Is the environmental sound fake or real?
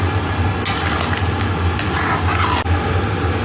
real